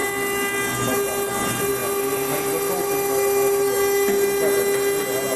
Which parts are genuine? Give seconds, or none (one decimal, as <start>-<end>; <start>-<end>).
0.0-5.4